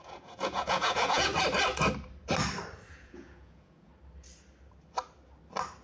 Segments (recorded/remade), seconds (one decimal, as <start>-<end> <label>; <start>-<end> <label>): 0.0-1.3 remade; 1.3-2.9 recorded; 2.9-3.9 remade; 3.9-5.8 recorded